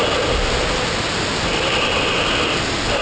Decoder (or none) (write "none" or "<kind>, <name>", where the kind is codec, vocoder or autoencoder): none